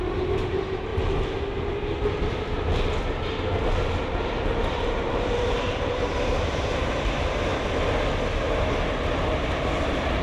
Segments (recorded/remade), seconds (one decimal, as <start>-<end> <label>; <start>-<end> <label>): 0.0-0.9 remade; 0.9-5.1 recorded; 5.1-7.5 remade; 7.5-8.3 recorded; 8.3-10.2 remade